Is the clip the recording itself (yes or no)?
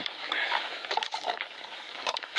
no